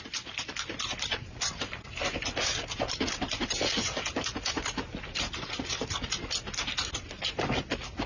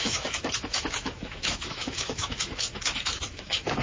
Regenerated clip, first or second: second